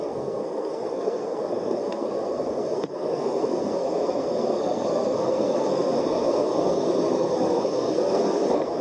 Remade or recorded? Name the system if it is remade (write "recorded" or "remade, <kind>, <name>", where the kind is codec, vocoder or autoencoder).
remade, codec, SNAC